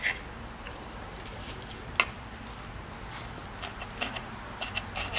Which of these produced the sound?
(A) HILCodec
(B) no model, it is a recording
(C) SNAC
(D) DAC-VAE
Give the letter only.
B